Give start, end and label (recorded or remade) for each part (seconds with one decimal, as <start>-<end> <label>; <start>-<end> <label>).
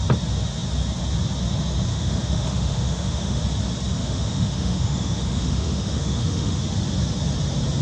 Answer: 0.0-1.9 recorded; 1.9-3.4 remade; 3.4-4.0 recorded; 4.0-6.6 remade; 6.6-7.8 recorded